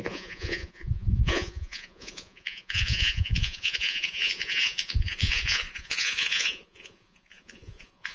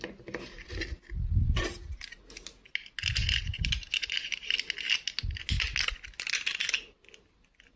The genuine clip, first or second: second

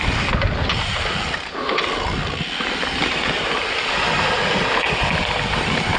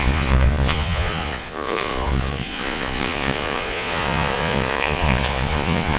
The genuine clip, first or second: first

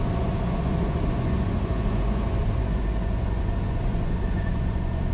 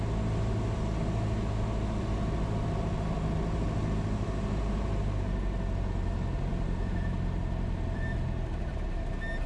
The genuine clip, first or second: second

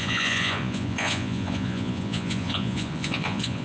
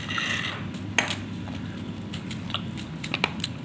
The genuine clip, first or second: second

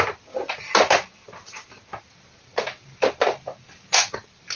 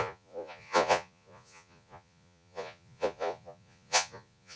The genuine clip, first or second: first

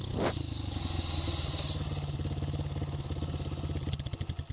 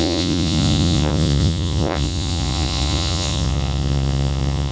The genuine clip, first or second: first